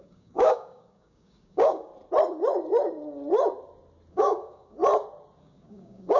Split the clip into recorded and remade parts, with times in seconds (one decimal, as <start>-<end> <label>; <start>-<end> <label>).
0.0-1.9 remade; 1.9-4.1 recorded; 4.1-4.8 remade; 4.8-5.4 recorded; 5.4-6.2 remade